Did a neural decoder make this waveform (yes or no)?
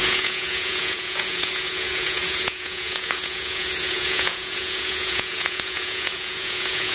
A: yes